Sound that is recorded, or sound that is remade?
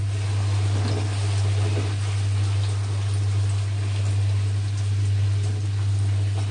recorded